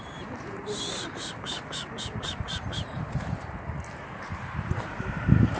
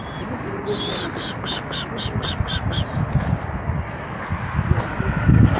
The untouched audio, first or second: second